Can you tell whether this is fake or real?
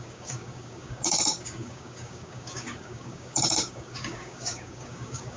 fake